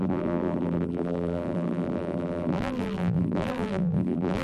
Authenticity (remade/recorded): remade